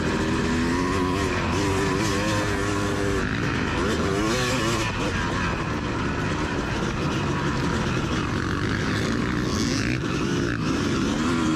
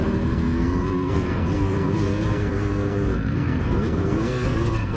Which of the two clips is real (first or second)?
first